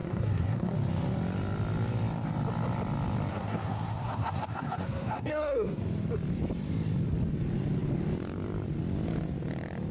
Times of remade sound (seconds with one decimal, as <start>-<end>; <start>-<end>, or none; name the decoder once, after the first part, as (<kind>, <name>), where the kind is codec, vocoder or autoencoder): 0.0-0.7 (codec, SNAC); 3.3-5.8